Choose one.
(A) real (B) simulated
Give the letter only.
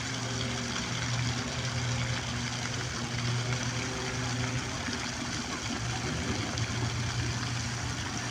A